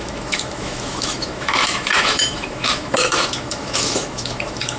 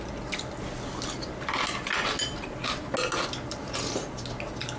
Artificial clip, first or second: first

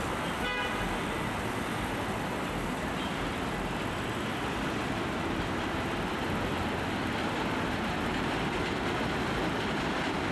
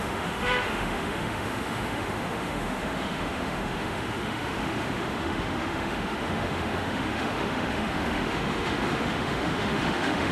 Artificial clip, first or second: second